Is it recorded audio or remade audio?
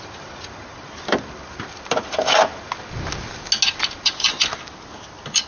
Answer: recorded